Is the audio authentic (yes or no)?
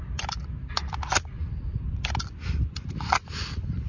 no